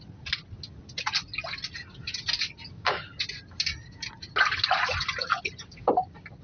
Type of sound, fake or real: real